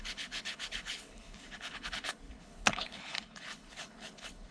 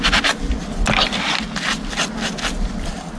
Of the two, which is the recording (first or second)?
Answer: second